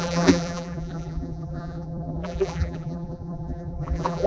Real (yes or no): no